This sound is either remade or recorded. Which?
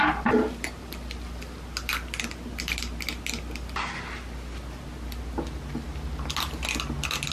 recorded